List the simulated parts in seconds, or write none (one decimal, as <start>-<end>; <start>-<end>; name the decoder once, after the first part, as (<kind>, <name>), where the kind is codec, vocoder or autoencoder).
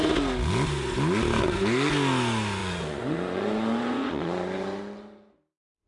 2.6-4.8 (vocoder, Vocos)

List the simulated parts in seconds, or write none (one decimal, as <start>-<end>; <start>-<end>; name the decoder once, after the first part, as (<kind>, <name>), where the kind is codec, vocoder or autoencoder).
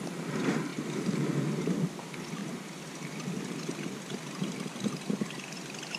2.4-6.0 (vocoder, BigVGAN v2)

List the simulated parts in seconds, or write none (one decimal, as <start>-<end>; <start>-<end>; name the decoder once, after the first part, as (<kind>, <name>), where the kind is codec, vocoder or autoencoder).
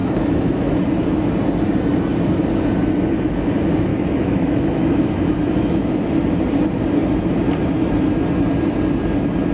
0.0-0.8 (autoencoder, DAC-VAE); 3.9-6.1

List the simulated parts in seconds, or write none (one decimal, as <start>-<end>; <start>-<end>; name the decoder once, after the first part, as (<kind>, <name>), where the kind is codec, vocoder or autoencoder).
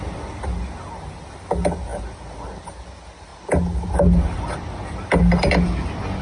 none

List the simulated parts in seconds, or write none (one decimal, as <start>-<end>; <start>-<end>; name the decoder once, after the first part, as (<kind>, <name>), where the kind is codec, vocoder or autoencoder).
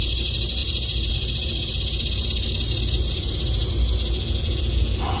none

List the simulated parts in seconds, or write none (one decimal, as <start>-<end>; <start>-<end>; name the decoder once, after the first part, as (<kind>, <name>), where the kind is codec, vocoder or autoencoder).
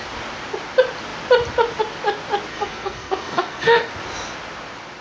2.5-3.9 (codec, SNAC)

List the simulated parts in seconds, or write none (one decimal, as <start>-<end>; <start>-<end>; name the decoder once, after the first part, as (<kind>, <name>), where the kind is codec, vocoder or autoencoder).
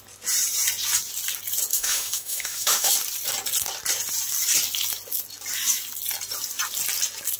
1.7-2.9 (autoencoder, DAC-VAE)